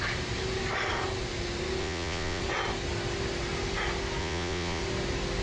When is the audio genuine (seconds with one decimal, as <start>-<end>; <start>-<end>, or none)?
0.0-1.8; 2.4-4.2; 4.8-5.4